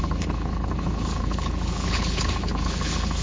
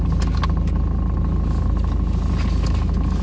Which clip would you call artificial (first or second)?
first